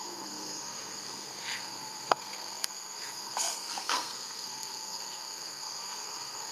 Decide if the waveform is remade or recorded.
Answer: remade